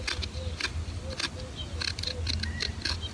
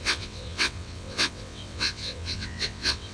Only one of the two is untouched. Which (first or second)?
first